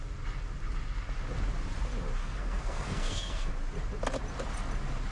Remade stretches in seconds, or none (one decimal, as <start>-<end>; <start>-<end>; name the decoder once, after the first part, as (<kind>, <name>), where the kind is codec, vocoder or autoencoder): 2.2-3.5 (codec, SNAC)